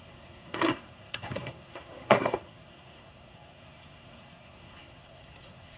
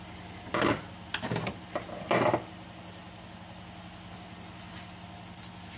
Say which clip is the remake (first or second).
first